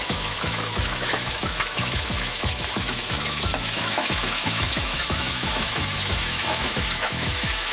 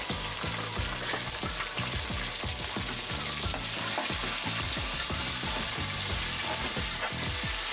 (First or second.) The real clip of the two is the second